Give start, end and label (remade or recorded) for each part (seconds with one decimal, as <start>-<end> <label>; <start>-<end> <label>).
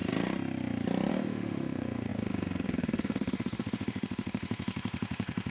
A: 0.0-1.1 recorded; 1.1-5.5 remade